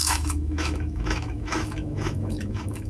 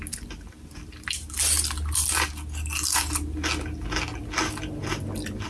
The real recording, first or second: second